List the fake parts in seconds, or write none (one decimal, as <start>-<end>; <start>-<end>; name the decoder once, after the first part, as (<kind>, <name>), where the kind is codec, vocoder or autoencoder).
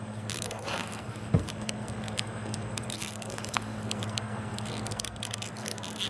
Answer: 0.0-6.1 (codec, SNAC)